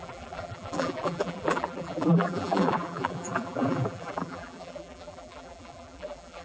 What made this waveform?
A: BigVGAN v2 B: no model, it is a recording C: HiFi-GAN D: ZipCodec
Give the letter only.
A